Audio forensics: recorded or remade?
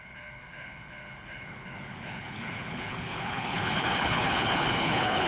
remade